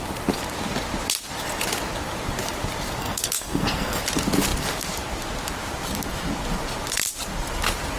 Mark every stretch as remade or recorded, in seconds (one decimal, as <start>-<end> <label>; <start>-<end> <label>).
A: 0.0-3.0 recorded; 3.0-4.0 remade; 4.0-8.0 recorded